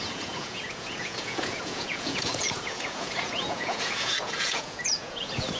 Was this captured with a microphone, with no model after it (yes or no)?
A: no